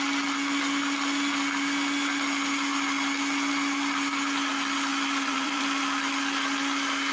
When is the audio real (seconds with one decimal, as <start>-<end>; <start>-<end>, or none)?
0.0-4.9; 5.6-7.1